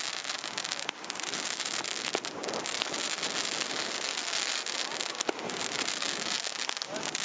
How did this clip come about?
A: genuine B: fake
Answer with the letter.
A